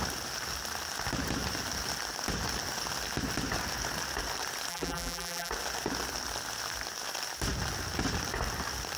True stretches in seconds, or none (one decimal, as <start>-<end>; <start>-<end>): 0.0-4.7; 5.5-9.0